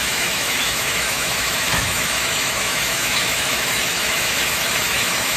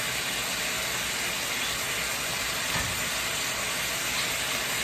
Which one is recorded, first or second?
second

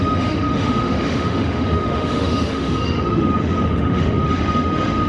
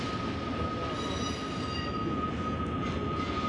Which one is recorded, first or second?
second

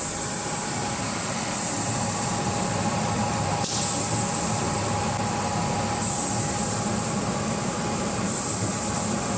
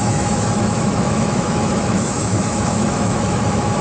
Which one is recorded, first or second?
first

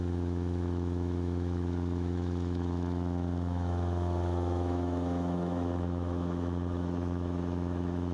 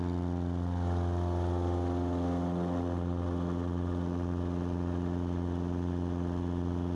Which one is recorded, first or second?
second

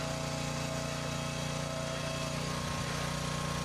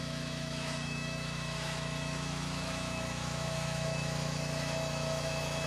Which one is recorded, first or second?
first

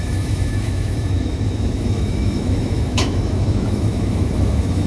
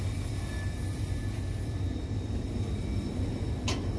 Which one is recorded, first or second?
second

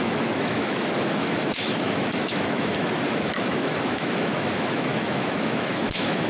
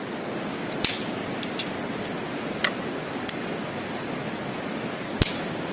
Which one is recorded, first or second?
second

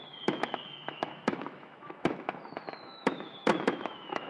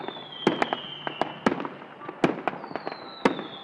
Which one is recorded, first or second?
second